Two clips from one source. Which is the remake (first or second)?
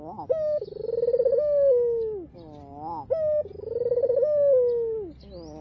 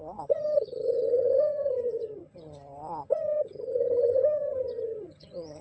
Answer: second